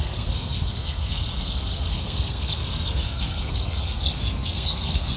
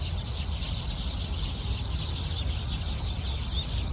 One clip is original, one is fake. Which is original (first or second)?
second